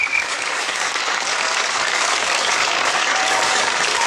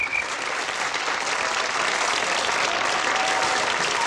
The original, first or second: second